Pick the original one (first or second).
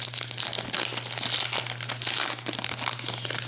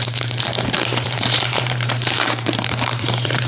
first